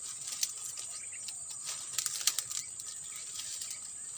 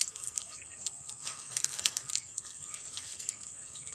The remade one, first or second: second